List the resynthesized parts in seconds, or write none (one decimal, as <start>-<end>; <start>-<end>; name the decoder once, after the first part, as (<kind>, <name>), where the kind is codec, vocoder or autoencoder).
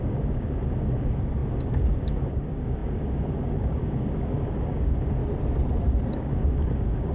0.0-5.2 (codec, DAC); 6.1-7.1